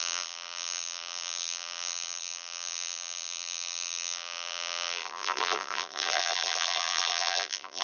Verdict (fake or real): fake